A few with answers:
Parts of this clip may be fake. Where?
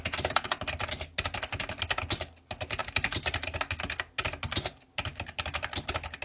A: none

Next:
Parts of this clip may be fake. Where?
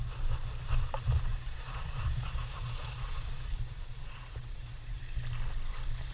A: 1.3-5.0 (vocoder, Vocos)